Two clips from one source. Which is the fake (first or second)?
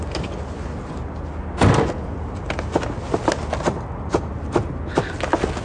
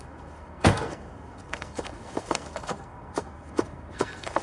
second